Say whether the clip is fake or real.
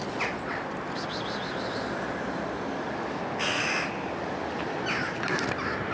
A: real